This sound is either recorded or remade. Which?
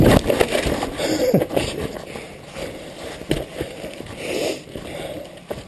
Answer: recorded